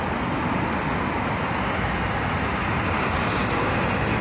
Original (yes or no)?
yes